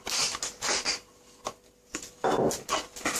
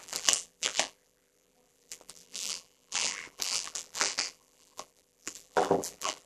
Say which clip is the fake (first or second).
second